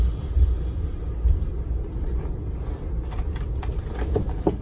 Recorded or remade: recorded